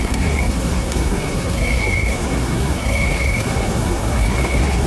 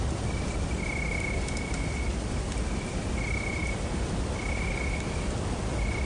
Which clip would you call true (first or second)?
second